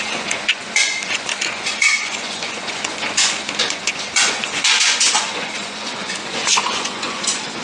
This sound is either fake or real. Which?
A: fake